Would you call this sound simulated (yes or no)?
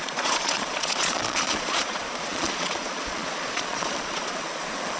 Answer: yes